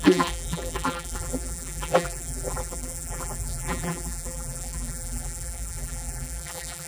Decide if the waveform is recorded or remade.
remade